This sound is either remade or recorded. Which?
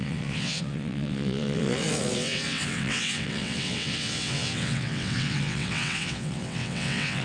remade